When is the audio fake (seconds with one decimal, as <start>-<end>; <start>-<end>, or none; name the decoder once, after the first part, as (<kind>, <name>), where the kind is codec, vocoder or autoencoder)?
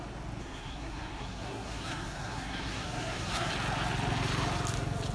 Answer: 0.4-3.5 (codec, SNAC)